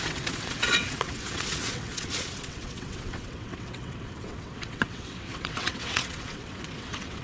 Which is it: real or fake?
fake